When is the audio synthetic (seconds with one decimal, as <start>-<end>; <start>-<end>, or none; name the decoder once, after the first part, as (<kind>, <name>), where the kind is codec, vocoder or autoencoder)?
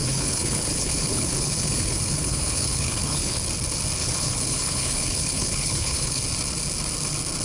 0.0-3.4 (codec, HILCodec); 4.0-6.2